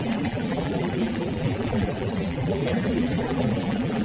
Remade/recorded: remade